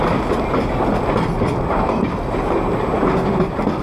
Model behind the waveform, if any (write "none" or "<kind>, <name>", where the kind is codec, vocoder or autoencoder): none